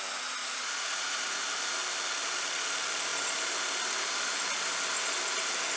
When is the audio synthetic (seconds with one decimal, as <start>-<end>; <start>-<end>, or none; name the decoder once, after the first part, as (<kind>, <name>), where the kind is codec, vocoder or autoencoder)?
0.4-1.4 (vocoder, Vocos)

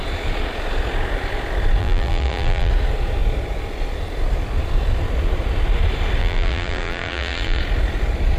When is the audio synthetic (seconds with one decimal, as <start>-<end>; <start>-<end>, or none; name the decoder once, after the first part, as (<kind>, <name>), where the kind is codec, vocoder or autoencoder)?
1.8-2.7 (vocoder, BigVGAN v2); 6.2-7.6

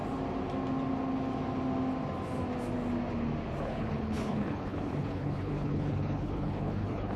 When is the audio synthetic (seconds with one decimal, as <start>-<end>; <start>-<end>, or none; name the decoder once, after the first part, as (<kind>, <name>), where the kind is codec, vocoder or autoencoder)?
3.6-7.2 (codec, HILCodec)